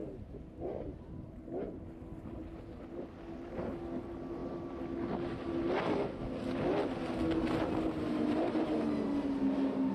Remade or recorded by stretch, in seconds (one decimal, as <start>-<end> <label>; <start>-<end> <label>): 0.0-9.9 recorded